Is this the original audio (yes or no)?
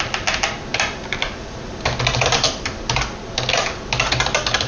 yes